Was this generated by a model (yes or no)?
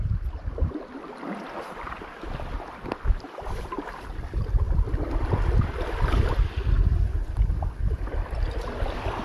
no